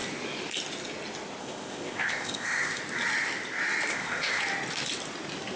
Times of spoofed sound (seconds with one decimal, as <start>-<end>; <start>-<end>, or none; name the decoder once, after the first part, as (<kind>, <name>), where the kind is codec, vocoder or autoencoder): 1.4-2.8 (codec, ZipCodec); 3.9-4.4